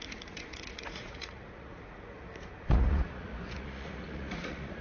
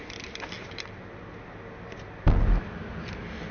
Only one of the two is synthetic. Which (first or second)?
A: first